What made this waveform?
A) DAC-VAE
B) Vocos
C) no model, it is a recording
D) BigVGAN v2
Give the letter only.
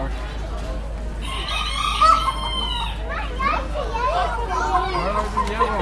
C